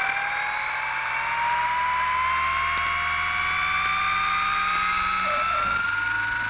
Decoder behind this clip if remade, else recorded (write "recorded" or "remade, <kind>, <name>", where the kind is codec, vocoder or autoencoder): recorded